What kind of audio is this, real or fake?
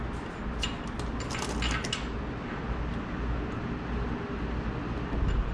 real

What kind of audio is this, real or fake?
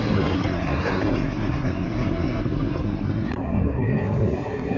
fake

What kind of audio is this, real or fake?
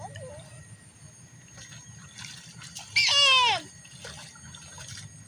real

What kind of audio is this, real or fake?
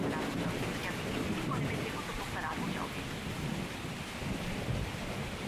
real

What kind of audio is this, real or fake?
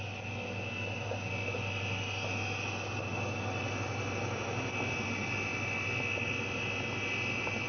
real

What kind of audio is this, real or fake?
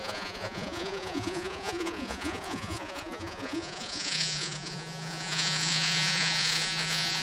fake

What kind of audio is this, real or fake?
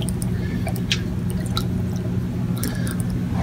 real